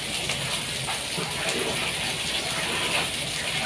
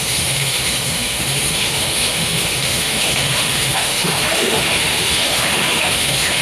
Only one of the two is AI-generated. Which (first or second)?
second